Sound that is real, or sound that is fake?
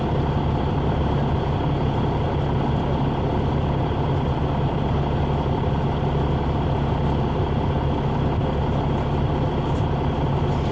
real